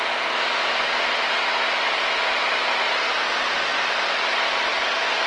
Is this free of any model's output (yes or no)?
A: yes